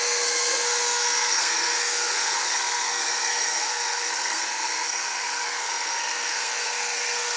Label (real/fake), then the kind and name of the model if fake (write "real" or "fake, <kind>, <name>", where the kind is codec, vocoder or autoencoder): fake, codec, SNAC